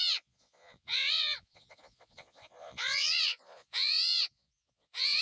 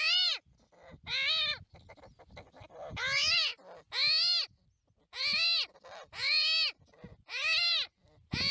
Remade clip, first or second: first